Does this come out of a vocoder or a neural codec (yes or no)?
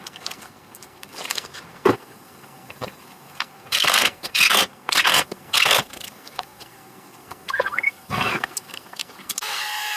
yes